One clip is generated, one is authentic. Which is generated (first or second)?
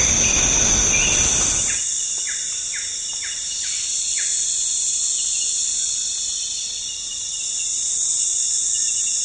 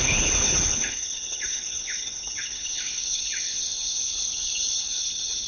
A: second